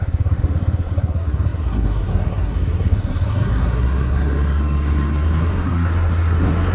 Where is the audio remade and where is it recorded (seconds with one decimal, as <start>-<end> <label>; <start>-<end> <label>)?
0.0-6.7 remade

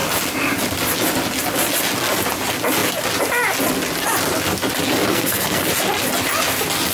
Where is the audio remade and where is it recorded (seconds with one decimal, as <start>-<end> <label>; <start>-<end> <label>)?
0.0-5.1 recorded; 5.1-5.6 remade; 5.6-6.9 recorded